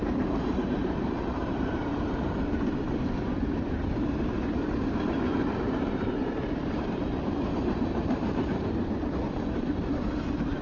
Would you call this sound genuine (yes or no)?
no